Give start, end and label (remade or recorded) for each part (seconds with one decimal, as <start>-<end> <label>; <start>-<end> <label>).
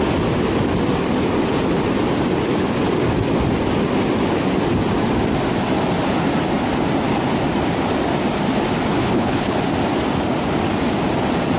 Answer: 0.0-9.0 recorded; 9.0-9.5 remade; 9.5-11.6 recorded